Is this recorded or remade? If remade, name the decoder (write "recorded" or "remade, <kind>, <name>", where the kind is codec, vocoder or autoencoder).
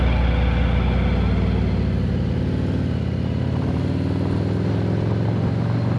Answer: recorded